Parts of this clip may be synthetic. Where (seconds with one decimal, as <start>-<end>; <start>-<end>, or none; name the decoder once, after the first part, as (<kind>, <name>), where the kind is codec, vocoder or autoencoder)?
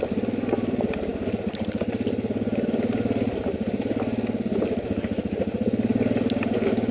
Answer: none